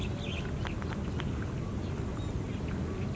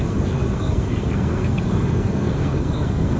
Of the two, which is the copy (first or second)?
second